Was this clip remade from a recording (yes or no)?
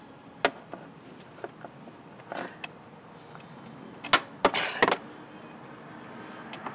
no